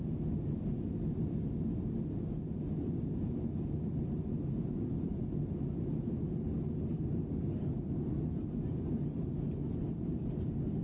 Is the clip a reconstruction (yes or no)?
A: no